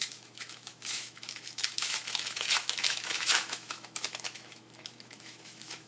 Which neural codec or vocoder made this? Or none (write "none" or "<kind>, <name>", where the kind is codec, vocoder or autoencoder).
autoencoder, DAC-VAE